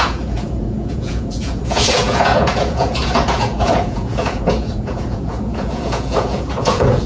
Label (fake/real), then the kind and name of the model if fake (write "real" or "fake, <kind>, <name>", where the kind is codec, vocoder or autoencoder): fake, vocoder, Vocos